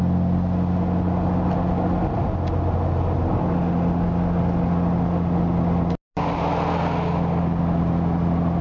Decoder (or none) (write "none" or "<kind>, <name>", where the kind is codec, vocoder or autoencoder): none